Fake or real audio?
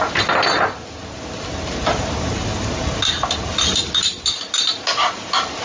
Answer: real